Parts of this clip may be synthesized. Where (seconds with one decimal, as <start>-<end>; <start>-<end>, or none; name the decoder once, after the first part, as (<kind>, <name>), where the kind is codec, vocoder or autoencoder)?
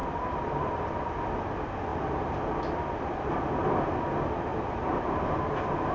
1.9-2.6 (vocoder, BigVGAN v2); 4.5-5.9